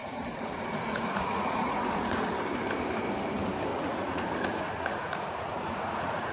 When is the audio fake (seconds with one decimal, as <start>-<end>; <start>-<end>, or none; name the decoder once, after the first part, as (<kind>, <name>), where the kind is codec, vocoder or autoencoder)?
0.0-2.3 (vocoder, Vocos); 3.7-6.3